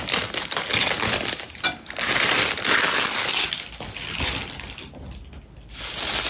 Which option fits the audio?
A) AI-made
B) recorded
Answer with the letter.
B